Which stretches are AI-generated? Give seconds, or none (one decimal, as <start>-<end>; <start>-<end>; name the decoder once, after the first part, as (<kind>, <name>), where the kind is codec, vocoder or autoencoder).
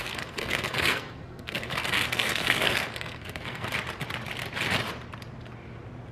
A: 0.0-3.7 (codec, SNAC)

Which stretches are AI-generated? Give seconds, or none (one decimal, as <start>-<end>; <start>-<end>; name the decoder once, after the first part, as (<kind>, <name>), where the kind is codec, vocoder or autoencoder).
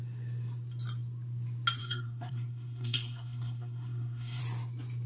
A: 1.8-4.4 (codec, SNAC)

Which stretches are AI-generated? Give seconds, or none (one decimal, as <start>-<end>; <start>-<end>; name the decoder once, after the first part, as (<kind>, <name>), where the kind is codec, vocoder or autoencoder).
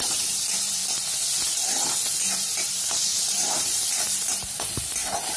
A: 0.0-0.8 (vocoder, BigVGAN v2); 2.2-5.4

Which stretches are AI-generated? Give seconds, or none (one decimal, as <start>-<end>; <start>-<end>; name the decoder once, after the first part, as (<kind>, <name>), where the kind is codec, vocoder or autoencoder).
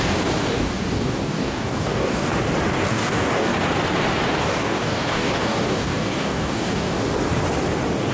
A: 0.0-2.3 (codec, DAC); 2.9-3.5; 4.4-7.0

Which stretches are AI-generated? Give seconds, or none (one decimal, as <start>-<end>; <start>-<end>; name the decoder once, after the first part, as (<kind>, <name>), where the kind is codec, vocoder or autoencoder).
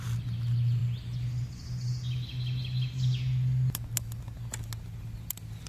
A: none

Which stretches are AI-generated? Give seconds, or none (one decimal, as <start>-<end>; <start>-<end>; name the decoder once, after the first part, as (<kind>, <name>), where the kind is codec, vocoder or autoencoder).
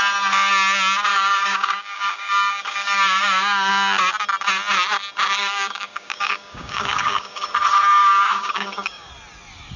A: 1.1-3.7 (codec, DAC); 5.4-7.4; 8.0-9.1